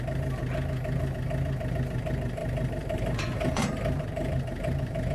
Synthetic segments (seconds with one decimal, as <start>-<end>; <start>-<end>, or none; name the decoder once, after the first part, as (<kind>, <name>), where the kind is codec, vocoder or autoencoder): 0.0-0.4 (vocoder, BigVGAN v2); 1.7-5.1